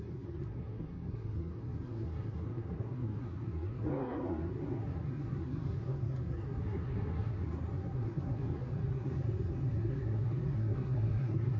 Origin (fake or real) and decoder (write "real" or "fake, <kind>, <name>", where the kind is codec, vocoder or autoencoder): fake, codec, SNAC